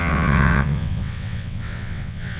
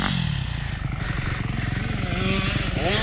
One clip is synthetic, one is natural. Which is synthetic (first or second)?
first